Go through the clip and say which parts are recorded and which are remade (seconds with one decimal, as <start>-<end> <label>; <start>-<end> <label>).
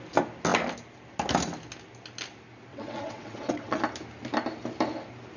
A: 0.0-2.7 recorded; 2.7-3.8 remade; 3.8-5.4 recorded